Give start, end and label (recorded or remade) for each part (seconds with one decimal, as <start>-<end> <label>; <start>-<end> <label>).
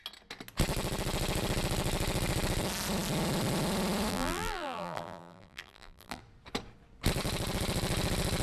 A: 0.0-4.1 recorded; 4.1-6.2 remade; 6.2-8.4 recorded